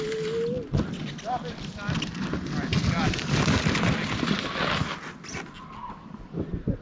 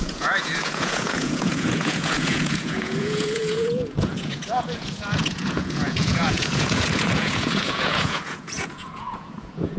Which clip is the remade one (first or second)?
second